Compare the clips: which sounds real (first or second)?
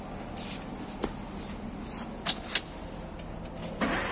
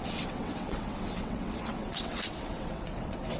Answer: first